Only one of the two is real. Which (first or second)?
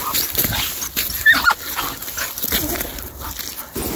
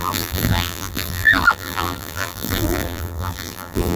first